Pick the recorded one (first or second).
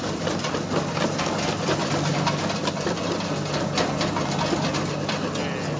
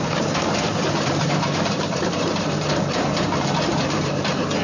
first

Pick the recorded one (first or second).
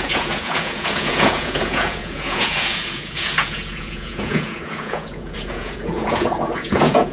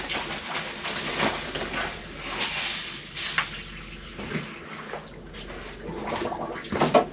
second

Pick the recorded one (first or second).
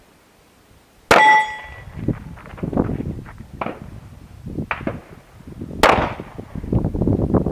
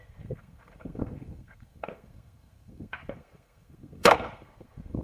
first